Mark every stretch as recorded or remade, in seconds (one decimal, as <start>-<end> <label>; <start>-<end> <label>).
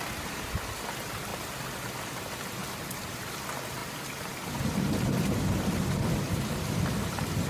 0.0-1.3 recorded; 1.3-1.9 remade; 1.9-2.6 recorded; 2.6-3.1 remade; 3.1-7.5 recorded